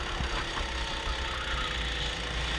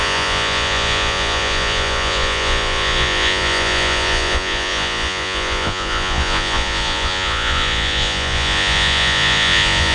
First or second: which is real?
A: first